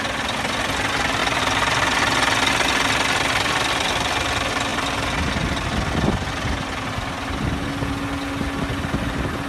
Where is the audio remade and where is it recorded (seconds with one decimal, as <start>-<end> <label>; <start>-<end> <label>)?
0.0-4.7 recorded; 4.7-5.3 remade; 5.3-9.5 recorded